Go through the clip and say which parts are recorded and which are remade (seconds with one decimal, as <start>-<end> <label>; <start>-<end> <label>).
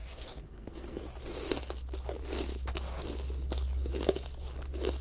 0.0-1.0 remade; 1.0-5.0 recorded